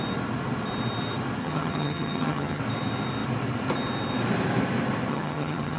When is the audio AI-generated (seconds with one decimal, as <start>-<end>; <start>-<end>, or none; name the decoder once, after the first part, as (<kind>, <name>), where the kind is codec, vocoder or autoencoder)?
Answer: 1.4-2.6 (vocoder, HiFi-GAN); 5.1-5.8